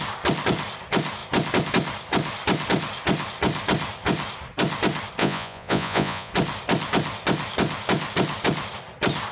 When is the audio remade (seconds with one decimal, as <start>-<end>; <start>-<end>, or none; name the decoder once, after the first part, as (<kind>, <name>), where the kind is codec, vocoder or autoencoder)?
5.2-6.3 (vocoder, Vocos)